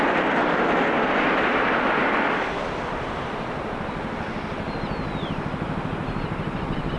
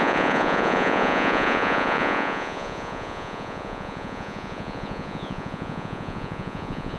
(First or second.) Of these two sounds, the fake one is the second